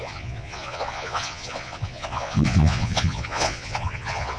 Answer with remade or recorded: remade